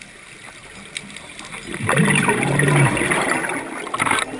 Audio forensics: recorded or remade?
recorded